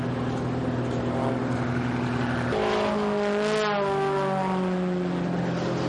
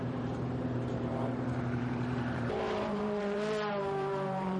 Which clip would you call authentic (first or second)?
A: first